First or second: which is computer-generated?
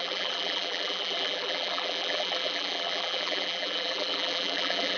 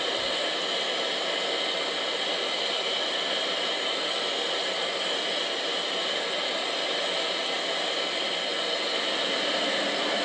first